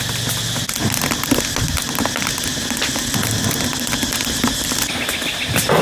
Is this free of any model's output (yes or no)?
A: yes